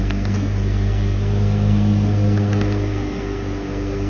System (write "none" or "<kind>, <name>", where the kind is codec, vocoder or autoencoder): codec, SNAC